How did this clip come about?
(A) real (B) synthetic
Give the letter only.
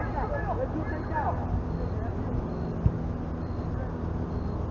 A